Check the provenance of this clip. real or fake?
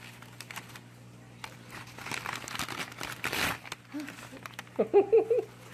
real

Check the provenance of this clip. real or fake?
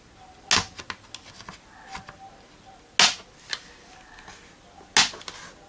real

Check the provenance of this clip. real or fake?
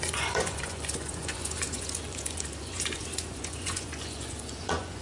fake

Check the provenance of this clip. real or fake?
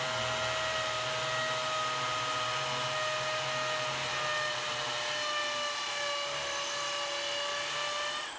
real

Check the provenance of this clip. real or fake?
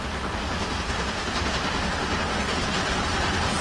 real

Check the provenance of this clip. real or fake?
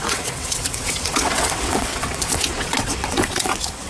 fake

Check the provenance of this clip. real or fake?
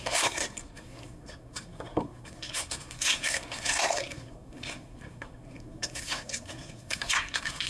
fake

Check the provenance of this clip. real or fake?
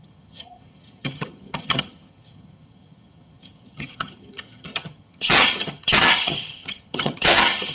fake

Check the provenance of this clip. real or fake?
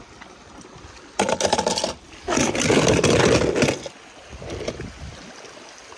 real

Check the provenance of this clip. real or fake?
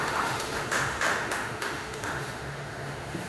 fake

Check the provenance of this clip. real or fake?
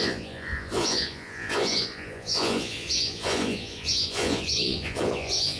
fake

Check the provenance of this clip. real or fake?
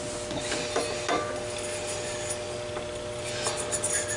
real